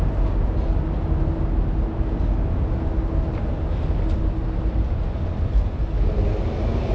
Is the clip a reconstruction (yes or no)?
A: no